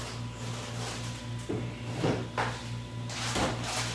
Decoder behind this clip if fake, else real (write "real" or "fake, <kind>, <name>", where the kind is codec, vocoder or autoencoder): real